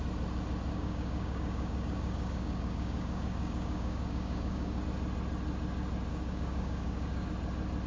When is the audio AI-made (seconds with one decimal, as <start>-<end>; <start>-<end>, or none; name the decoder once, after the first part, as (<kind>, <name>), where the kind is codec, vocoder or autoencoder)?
0.7-4.8 (codec, DAC); 6.1-7.3